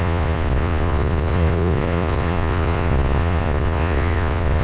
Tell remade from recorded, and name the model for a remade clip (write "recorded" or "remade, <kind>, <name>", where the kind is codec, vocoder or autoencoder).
remade, vocoder, Vocos